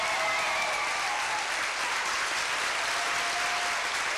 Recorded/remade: recorded